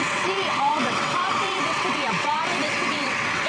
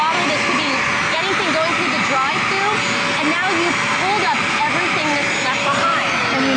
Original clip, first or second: second